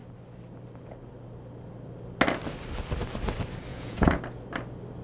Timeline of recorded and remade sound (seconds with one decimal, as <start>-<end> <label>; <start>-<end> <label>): 0.0-3.7 recorded; 3.7-4.2 remade; 4.2-5.0 recorded